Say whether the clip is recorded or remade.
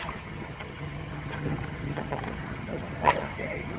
remade